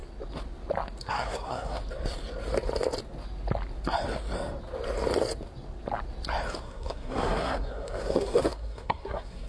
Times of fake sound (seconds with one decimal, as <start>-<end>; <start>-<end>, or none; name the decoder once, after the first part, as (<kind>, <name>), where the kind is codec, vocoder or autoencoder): 1.0-1.8 (codec, SNAC); 6.6-9.5